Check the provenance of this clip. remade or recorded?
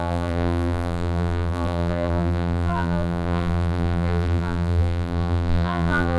remade